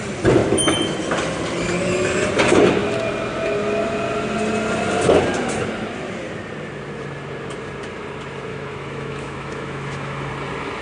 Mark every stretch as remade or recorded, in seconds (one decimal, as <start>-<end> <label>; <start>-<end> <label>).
0.0-0.4 recorded; 0.4-1.0 remade; 1.0-8.5 recorded; 8.5-10.3 remade; 10.3-10.8 recorded

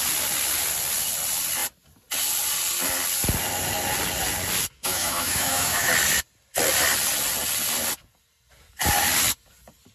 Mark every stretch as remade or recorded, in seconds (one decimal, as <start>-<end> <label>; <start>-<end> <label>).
0.0-4.8 recorded; 4.8-5.9 remade; 5.9-9.9 recorded

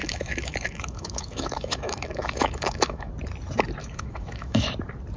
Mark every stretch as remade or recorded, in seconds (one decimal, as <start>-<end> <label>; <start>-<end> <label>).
0.0-3.1 remade; 3.1-3.8 recorded; 3.8-4.7 remade; 4.7-5.2 recorded

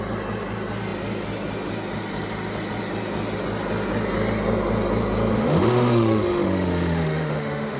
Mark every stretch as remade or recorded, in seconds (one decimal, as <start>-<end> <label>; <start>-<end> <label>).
0.0-5.3 recorded; 5.3-7.8 remade

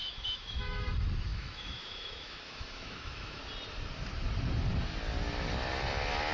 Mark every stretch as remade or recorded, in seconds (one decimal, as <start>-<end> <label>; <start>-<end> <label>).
0.0-0.8 remade; 0.8-1.3 recorded; 1.3-3.4 remade; 3.4-6.3 recorded